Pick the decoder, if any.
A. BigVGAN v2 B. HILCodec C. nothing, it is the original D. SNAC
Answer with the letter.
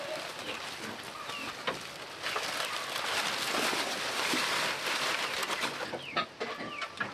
C